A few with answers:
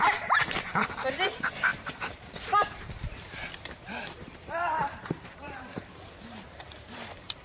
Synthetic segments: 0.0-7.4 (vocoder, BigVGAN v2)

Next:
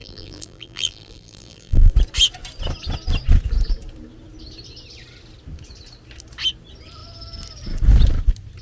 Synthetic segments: 0.0-1.9 (vocoder, BigVGAN v2)

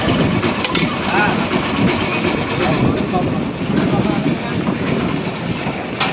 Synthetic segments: 0.0-2.1 (vocoder, BigVGAN v2)